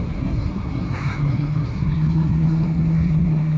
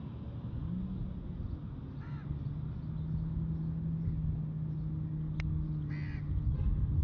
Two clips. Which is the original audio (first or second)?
second